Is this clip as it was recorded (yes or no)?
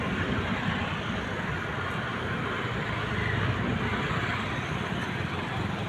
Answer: yes